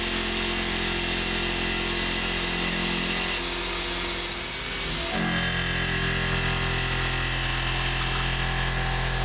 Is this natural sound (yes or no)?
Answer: yes